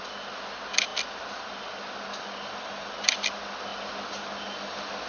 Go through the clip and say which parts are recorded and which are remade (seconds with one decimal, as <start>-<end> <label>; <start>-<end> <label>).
0.0-5.1 recorded